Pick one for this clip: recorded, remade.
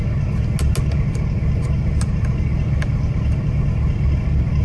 recorded